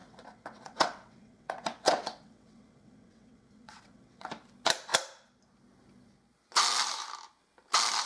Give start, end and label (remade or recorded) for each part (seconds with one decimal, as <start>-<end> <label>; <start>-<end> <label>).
0.0-4.3 remade; 4.3-8.1 recorded